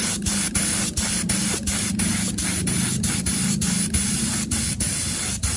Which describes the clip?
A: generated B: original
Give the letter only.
A